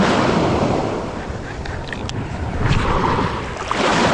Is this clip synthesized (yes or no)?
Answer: yes